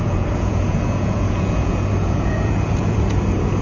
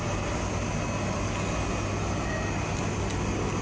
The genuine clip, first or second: second